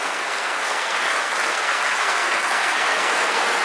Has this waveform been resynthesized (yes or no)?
yes